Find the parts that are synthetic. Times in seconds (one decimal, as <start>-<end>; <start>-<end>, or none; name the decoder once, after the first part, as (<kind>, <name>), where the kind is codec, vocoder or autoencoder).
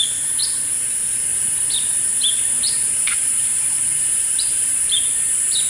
1.3-4.7 (vocoder, BigVGAN v2)